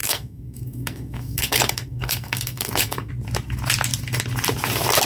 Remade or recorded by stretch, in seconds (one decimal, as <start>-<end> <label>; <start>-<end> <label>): 0.0-3.1 remade; 3.1-5.1 recorded